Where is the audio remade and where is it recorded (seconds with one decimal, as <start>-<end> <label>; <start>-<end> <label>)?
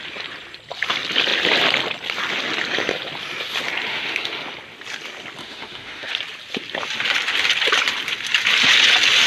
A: 0.0-3.9 recorded; 3.9-4.4 remade; 4.4-5.4 recorded; 5.4-6.1 remade; 6.1-9.3 recorded